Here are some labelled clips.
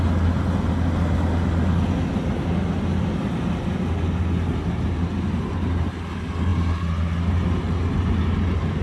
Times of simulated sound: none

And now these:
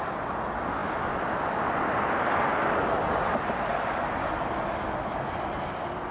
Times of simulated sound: none

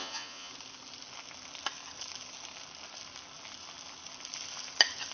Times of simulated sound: 0.0-0.5 (vocoder, Vocos)

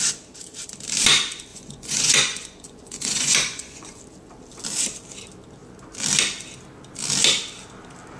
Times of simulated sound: 1.5-4.0 (vocoder, Vocos)

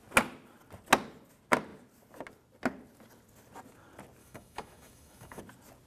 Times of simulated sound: 4.2-5.4 (autoencoder, DAC-VAE)

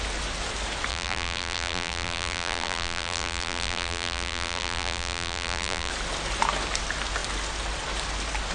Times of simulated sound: 0.9-5.9 (vocoder, BigVGAN v2)

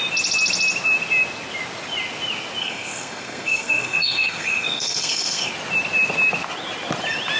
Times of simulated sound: 2.6-5.5 (codec, SNAC)

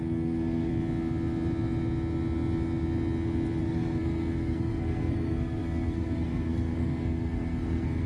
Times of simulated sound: 0.0-0.7 (codec, SNAC); 3.6-8.1